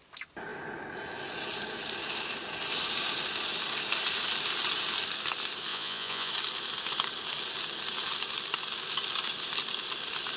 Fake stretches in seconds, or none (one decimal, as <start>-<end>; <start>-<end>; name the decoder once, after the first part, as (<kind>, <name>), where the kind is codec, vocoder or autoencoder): 5.7-6.3 (vocoder, Vocos)